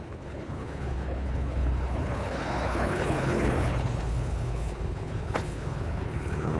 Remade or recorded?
remade